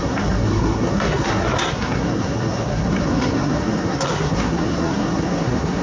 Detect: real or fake fake